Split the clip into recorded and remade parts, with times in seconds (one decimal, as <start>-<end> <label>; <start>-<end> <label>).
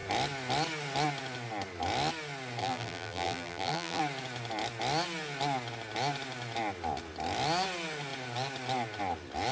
0.0-2.6 recorded; 2.6-4.0 remade; 4.0-9.5 recorded